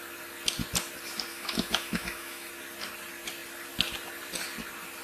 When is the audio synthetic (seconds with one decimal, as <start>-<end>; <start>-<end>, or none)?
1.3-2.5